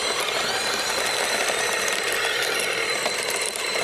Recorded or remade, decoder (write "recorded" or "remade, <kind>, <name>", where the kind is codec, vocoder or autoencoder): recorded